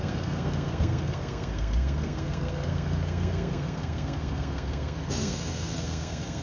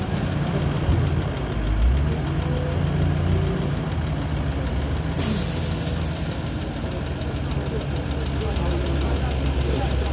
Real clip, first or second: second